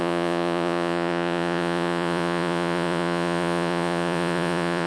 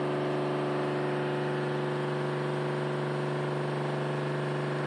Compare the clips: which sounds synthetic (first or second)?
first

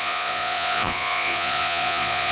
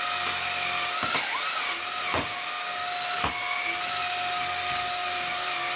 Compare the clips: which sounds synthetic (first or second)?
first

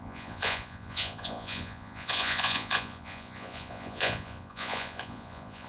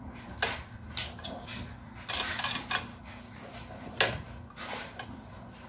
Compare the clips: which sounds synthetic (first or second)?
first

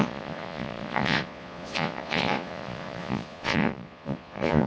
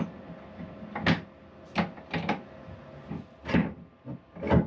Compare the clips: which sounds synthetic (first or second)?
first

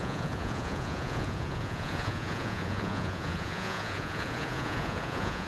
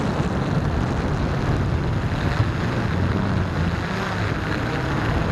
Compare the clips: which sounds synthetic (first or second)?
first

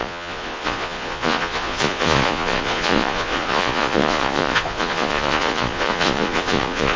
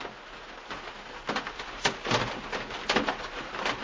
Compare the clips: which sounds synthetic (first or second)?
first